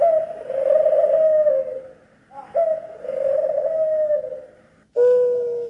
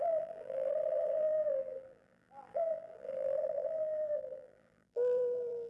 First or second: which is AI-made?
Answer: second